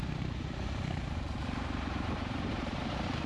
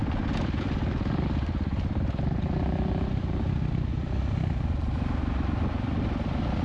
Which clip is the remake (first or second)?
first